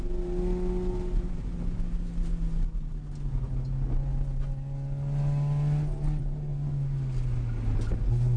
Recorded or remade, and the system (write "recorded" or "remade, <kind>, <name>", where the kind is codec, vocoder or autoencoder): recorded